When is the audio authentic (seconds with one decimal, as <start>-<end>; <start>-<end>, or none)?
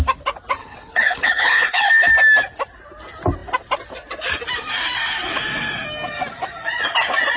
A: 0.0-0.6; 2.1-7.4